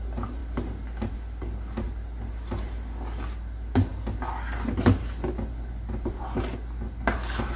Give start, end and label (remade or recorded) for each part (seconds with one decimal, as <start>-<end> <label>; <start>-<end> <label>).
0.0-7.6 recorded